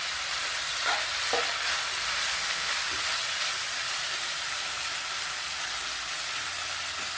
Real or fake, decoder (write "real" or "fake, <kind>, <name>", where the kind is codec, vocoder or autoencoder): real